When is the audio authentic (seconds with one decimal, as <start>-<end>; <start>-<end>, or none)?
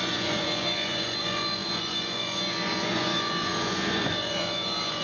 none